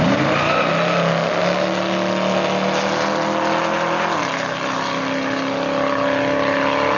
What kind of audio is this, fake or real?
real